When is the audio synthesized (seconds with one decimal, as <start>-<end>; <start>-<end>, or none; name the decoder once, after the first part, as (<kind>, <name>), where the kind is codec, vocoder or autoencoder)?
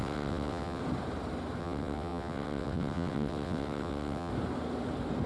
0.0-0.8 (vocoder, WaveNeXt); 1.6-4.3